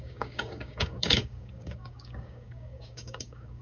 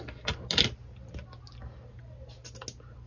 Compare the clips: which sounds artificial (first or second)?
first